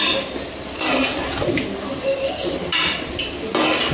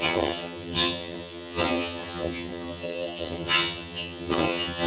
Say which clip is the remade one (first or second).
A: second